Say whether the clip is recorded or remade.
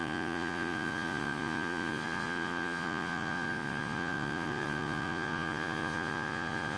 remade